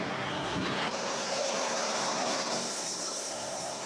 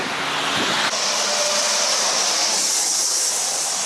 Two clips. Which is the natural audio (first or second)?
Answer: second